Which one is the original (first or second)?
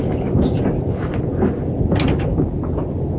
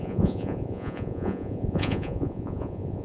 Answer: first